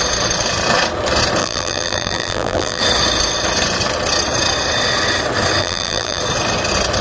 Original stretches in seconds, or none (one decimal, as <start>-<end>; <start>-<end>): 0.0-1.4; 2.8-5.6; 6.2-7.0